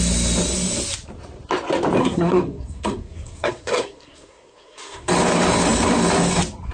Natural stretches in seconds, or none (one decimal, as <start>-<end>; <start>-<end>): 0.0-2.0; 5.1-6.7